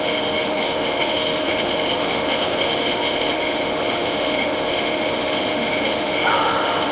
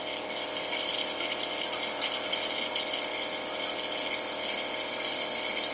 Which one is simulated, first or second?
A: first